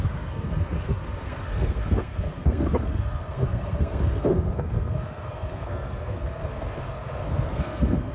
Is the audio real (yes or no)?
no